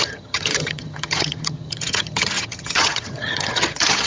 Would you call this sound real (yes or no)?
no